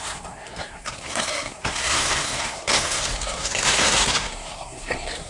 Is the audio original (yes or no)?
no